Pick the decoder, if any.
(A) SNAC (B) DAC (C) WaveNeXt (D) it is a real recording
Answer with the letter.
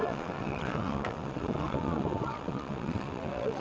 C